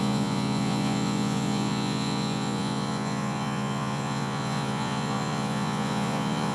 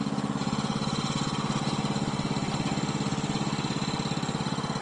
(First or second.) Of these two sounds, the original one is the second